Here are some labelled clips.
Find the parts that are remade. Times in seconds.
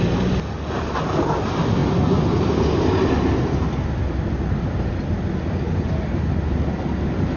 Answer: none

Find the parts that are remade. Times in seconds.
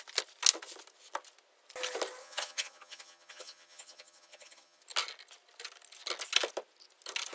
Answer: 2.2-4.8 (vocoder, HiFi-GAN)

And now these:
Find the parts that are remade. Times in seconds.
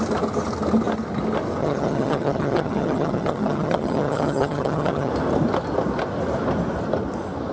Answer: 1.6-5.1 (vocoder, HiFi-GAN)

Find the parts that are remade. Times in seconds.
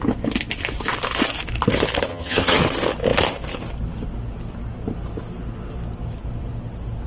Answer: 2.1-2.6 (vocoder, HiFi-GAN)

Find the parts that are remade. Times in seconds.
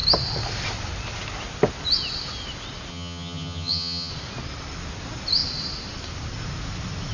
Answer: 2.9-4.1 (vocoder, HiFi-GAN)